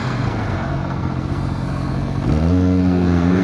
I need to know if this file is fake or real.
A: fake